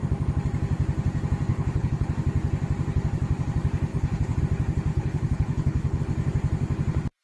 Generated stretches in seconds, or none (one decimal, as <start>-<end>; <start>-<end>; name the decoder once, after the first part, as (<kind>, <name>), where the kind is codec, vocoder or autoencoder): 1.5-2.1 (codec, HILCodec); 3.9-4.4; 4.9-6.0